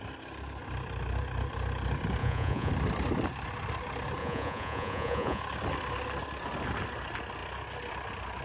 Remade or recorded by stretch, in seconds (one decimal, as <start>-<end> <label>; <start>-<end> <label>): 0.0-2.2 recorded; 2.2-2.7 remade; 2.7-4.2 recorded; 4.2-5.4 remade; 5.4-8.4 recorded